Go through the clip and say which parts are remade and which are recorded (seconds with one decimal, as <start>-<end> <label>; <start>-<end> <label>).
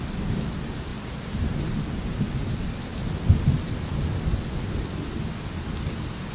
0.0-6.3 recorded